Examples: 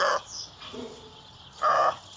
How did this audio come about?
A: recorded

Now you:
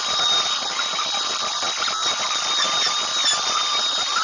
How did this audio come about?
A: recorded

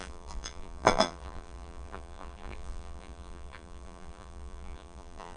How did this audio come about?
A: remade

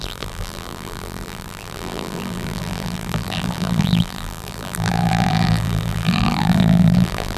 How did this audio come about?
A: remade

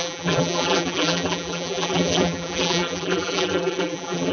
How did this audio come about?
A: remade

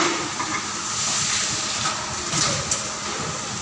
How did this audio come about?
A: recorded